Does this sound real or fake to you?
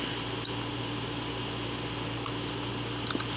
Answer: real